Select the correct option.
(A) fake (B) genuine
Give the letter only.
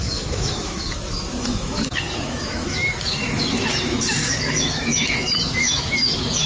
A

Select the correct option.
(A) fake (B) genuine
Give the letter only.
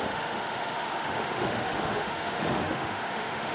A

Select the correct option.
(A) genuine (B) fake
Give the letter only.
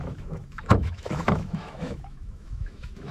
B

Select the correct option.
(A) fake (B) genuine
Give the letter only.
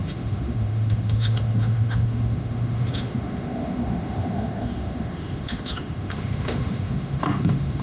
A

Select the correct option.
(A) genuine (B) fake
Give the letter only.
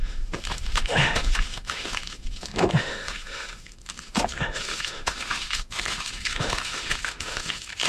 B